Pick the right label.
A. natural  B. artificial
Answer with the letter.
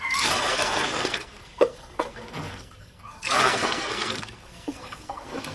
B